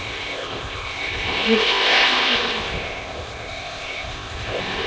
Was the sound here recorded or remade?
remade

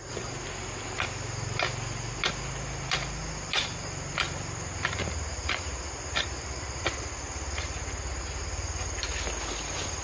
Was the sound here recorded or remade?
recorded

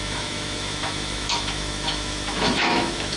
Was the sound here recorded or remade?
remade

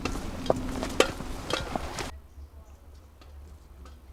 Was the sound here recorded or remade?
recorded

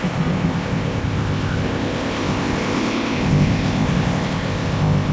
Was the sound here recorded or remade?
remade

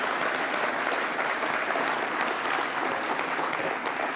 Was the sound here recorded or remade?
recorded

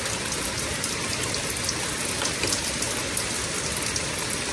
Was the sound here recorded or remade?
recorded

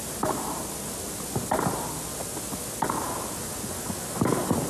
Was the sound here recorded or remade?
recorded